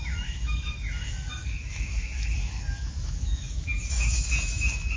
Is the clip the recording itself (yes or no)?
no